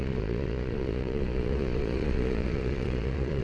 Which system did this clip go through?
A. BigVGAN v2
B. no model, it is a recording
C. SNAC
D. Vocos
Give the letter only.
D